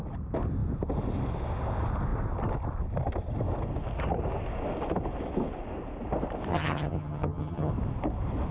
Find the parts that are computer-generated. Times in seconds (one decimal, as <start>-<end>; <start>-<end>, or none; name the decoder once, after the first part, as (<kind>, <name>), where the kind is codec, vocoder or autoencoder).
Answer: 6.5-7.7 (vocoder, HiFi-GAN)

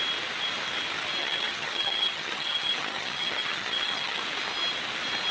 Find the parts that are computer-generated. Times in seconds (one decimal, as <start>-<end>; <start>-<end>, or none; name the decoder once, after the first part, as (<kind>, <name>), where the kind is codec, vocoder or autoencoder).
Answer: 1.2-4.2 (vocoder, HiFi-GAN)

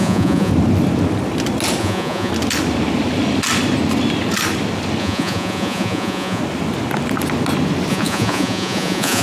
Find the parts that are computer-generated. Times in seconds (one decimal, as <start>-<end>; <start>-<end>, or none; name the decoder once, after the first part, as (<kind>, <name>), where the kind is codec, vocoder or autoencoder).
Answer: 0.0-0.5 (vocoder, Vocos); 1.8-2.3; 5.0-6.4; 7.9-9.2

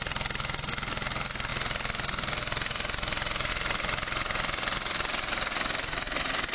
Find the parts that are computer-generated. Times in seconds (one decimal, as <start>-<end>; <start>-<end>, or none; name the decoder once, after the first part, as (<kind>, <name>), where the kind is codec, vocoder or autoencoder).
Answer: none

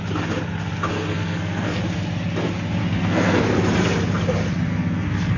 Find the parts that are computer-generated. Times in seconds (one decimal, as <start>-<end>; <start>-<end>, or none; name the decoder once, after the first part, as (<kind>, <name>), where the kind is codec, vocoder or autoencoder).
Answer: 0.9-1.8 (codec, SNAC); 2.8-3.4; 4.7-5.4

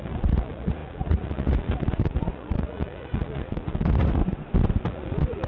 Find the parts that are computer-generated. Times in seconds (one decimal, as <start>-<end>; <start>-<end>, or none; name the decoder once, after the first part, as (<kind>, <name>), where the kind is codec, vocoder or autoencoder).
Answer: 0.0-4.2 (vocoder, Vocos); 4.8-5.5

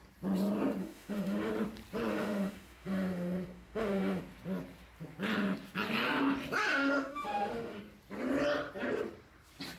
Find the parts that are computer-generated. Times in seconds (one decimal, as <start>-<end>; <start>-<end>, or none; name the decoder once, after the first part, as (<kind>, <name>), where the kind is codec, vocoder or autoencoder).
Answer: 0.8-1.5 (autoencoder, DAC-VAE); 2.1-4.2; 6.6-7.8